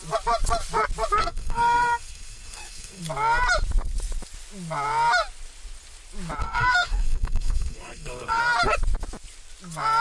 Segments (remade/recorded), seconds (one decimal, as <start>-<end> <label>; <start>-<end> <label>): 0.0-1.2 recorded; 1.2-3.0 remade; 3.0-6.4 recorded; 6.4-8.4 remade; 8.4-10.0 recorded